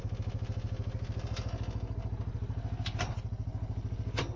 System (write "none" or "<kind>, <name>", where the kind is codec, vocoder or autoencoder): none